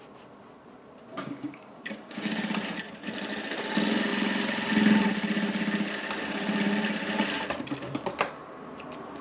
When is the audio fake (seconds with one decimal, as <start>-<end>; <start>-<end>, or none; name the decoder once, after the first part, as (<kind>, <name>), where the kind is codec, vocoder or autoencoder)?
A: 1.1-2.4 (codec, DAC)